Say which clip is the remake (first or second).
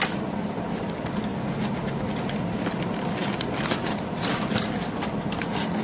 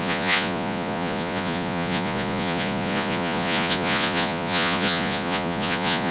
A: second